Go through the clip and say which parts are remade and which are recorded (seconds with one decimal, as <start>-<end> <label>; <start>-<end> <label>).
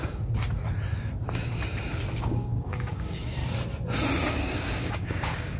0.0-0.4 remade; 0.4-2.1 recorded; 2.1-3.4 remade; 3.4-4.3 recorded; 4.3-5.6 remade